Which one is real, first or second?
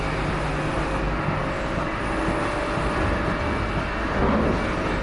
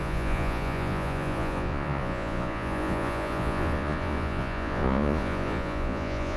first